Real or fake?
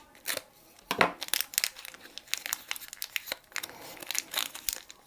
real